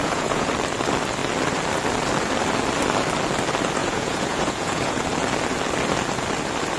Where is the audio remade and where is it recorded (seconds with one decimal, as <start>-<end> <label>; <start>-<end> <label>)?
0.0-0.5 remade; 0.5-3.8 recorded; 3.8-5.0 remade; 5.0-6.8 recorded